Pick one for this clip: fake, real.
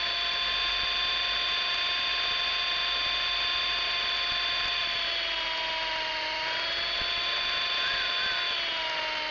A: real